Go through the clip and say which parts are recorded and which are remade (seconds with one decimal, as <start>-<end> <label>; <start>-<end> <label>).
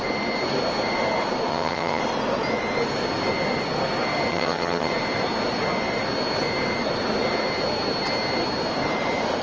0.0-1.5 recorded; 1.5-2.0 remade; 2.0-4.3 recorded; 4.3-4.9 remade; 4.9-9.4 recorded